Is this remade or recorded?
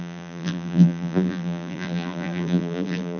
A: remade